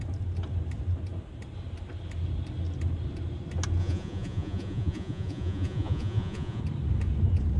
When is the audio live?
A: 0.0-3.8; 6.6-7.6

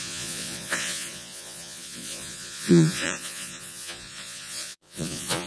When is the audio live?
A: none